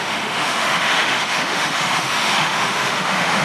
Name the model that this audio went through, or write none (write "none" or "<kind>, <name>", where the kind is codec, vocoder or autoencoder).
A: autoencoder, DAC-VAE